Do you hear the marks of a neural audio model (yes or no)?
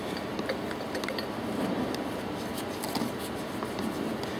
no